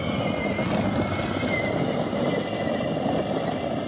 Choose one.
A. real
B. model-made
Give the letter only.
A